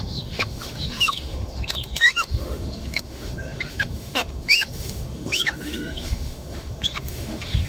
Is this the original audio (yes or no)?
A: no